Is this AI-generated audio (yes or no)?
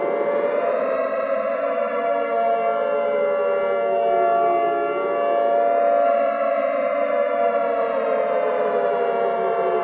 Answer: no